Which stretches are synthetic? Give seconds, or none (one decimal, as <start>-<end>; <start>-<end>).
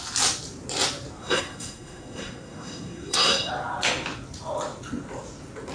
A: 1.2-3.5